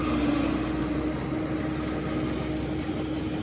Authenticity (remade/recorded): recorded